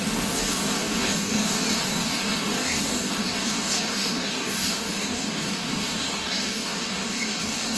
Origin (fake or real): fake